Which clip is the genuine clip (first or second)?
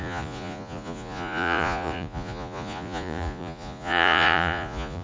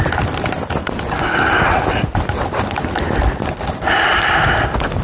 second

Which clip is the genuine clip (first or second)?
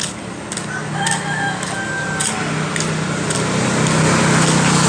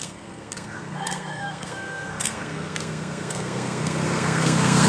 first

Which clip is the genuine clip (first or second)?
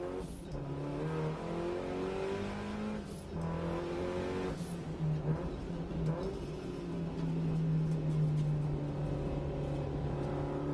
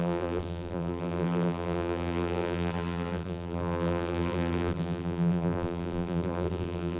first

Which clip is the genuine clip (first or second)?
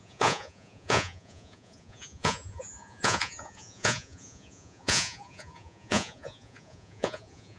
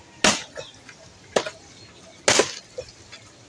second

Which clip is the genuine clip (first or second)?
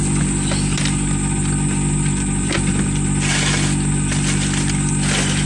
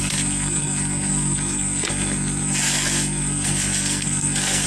first